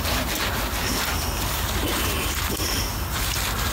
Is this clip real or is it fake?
real